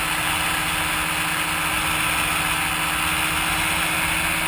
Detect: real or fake real